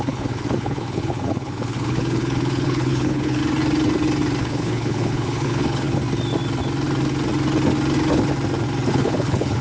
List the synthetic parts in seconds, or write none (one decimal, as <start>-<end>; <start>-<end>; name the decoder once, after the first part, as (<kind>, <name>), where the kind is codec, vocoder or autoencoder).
0.0-3.4 (codec, HILCodec); 4.4-6.0; 8.9-9.6